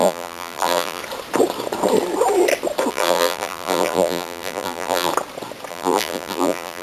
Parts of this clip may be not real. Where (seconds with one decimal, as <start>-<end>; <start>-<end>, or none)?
0.0-1.0; 2.9-5.1; 5.7-6.8